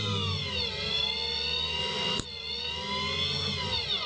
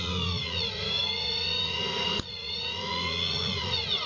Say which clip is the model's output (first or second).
second